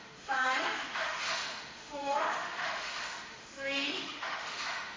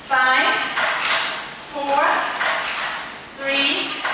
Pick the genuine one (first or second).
second